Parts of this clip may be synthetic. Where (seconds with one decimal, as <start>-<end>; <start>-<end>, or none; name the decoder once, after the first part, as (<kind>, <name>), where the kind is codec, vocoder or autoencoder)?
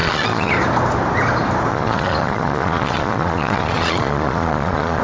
0.0-0.5 (vocoder, Vocos); 1.7-5.0